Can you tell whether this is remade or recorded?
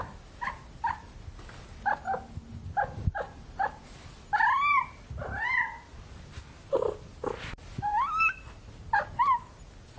recorded